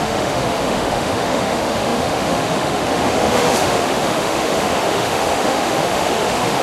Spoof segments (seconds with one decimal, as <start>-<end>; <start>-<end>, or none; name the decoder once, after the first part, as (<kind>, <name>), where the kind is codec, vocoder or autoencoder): 0.0-6.6 (autoencoder, DAC-VAE)